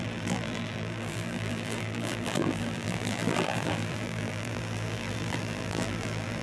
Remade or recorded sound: remade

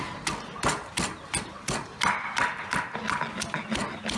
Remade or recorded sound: recorded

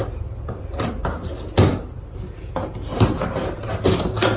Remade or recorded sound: recorded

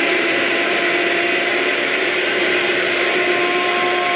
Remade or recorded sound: remade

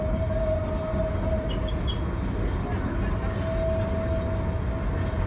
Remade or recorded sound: recorded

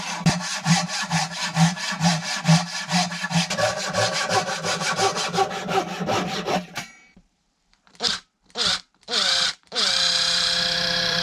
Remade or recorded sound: remade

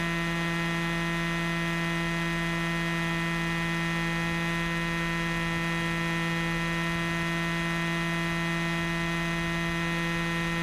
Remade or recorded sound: recorded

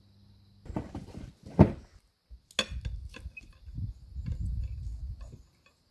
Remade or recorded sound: recorded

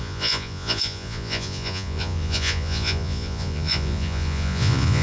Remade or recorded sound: remade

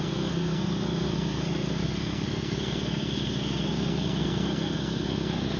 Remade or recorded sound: remade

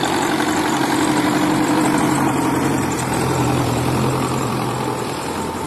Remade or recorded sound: remade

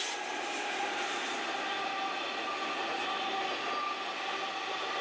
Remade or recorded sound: recorded